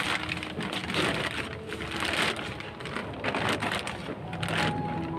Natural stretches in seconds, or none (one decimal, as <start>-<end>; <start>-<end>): 0.0-0.8; 1.7-3.0; 3.5-5.2